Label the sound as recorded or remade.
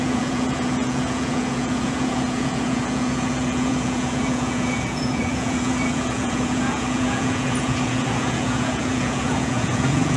remade